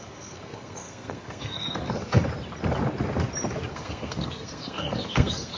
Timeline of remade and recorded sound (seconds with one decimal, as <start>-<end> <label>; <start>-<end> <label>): 0.0-2.2 remade; 2.2-3.7 recorded; 3.7-5.6 remade